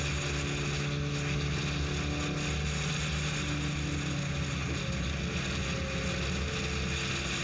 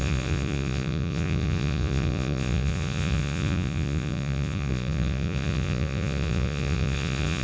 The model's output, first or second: second